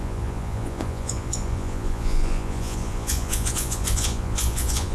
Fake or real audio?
fake